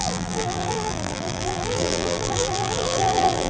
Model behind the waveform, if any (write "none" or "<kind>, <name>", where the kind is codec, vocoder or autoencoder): vocoder, BigVGAN v2